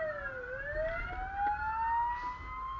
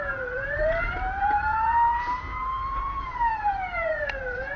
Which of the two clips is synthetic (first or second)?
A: second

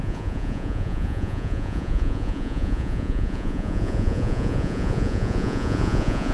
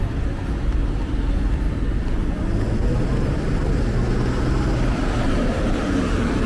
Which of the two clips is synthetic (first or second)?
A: first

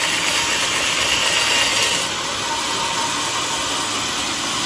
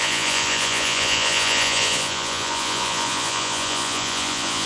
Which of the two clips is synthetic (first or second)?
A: second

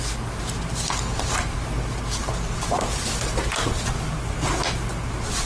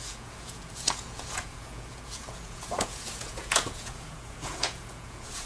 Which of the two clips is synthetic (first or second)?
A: second